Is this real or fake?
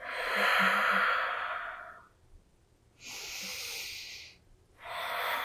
real